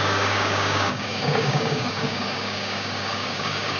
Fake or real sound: fake